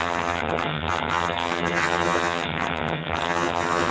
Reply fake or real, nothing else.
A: fake